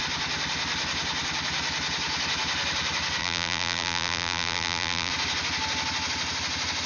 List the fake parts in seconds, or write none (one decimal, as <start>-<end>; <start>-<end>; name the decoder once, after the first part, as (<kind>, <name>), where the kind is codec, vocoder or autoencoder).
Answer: 3.2-5.1 (vocoder, BigVGAN v2)